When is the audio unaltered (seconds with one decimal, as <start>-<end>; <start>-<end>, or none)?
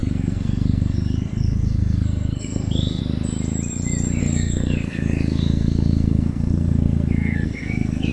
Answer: 3.0-4.2